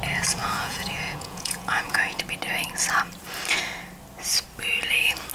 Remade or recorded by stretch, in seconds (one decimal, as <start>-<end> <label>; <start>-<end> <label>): 0.0-0.4 recorded; 0.4-2.2 remade; 2.2-5.3 recorded